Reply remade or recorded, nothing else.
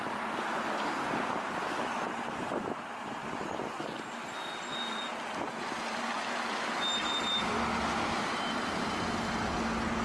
recorded